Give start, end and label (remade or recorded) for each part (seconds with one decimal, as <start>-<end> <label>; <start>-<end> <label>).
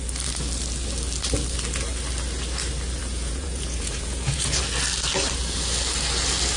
0.0-3.0 recorded; 3.0-4.6 remade; 4.6-6.6 recorded